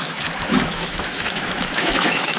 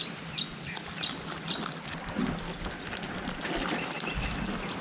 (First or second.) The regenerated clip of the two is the first